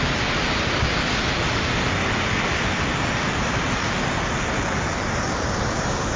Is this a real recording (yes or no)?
yes